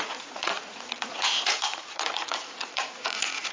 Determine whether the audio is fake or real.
fake